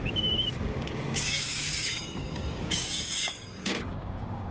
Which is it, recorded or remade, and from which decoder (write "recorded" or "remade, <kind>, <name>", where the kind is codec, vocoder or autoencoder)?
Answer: remade, codec, DAC